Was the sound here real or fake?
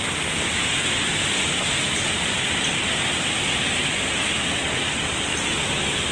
real